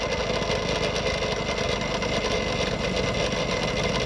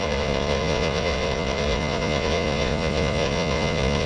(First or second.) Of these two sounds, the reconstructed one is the second